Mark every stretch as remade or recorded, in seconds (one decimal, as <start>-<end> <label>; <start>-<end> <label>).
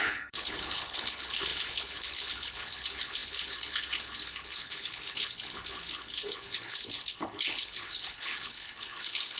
0.0-9.4 remade